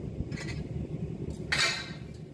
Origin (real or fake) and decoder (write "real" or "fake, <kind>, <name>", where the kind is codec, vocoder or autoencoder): real